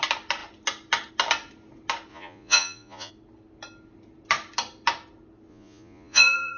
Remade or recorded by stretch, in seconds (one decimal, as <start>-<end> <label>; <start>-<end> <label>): 0.0-2.1 recorded; 2.1-3.1 remade; 3.1-5.5 recorded; 5.5-6.6 remade